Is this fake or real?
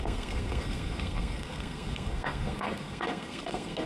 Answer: fake